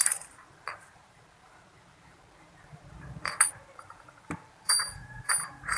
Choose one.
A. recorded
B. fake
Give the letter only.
B